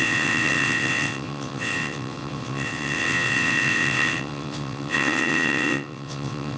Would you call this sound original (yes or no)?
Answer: no